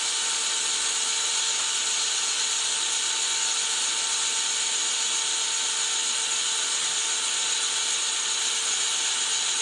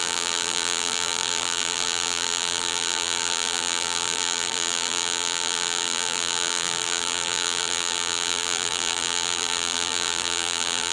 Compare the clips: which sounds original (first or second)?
first